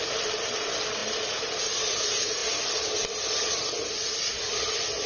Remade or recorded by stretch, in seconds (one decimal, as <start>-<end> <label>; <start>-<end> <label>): 0.0-5.1 recorded